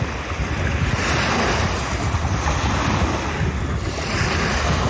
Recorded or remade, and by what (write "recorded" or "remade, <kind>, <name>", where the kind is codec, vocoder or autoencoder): recorded